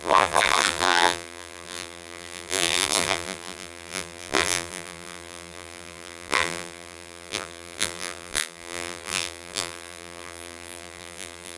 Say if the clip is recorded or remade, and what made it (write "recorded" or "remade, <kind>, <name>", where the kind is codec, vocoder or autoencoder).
remade, vocoder, BigVGAN v2